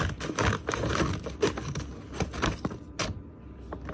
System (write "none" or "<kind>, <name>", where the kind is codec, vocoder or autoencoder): none